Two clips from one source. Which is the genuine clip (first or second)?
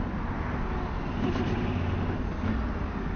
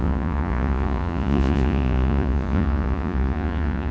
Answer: first